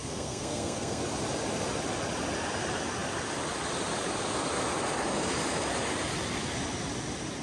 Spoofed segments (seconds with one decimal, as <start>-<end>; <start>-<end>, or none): 0.0-1.0